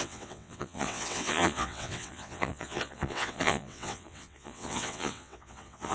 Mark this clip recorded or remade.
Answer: remade